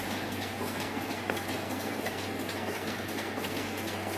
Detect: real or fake fake